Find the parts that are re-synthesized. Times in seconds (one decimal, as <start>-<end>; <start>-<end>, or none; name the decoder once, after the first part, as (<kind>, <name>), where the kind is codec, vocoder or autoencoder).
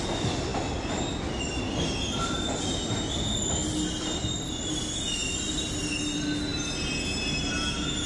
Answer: none